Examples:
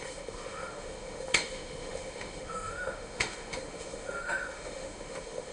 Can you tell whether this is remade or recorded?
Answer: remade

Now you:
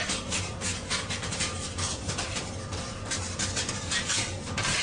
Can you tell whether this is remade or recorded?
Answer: remade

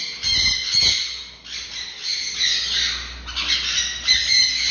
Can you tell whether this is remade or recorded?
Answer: recorded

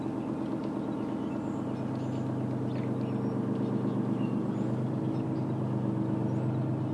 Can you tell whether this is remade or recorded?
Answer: recorded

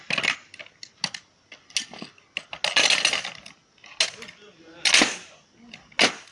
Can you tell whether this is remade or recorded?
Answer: recorded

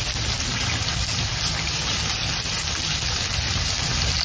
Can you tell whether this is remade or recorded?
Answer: recorded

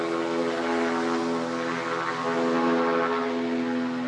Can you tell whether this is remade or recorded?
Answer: recorded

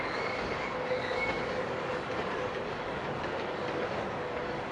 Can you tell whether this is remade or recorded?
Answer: remade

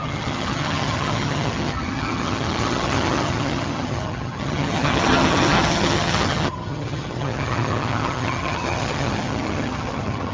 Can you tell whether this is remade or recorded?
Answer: remade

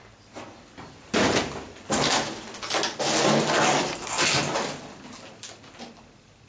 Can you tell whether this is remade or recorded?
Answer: recorded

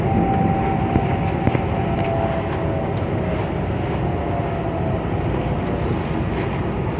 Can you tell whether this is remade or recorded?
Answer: recorded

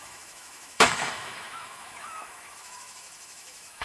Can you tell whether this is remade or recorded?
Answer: remade